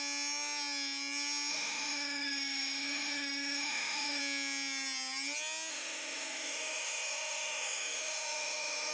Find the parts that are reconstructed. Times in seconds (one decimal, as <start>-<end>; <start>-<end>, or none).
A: 1.5-4.2; 5.7-8.9